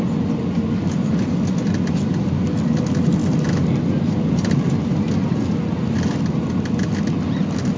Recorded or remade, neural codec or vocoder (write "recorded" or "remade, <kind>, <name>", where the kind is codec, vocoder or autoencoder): recorded